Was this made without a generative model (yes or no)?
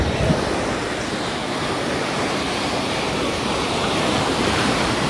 no